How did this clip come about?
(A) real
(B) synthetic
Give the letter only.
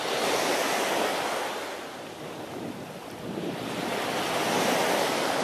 A